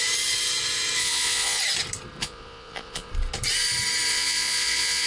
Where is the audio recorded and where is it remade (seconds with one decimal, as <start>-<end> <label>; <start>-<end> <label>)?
0.0-1.0 recorded; 1.0-1.6 remade; 1.6-2.2 recorded; 2.2-3.1 remade; 3.1-4.1 recorded; 4.1-5.1 remade